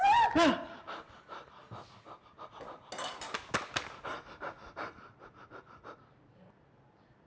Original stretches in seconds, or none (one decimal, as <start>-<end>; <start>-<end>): 1.6-4.7